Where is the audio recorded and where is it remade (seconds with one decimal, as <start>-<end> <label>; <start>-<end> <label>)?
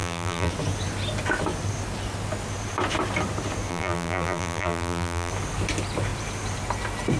0.0-0.5 remade; 0.5-3.7 recorded; 3.7-5.3 remade; 5.3-7.2 recorded